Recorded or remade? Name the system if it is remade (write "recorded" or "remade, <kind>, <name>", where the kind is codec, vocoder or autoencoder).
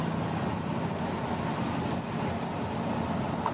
recorded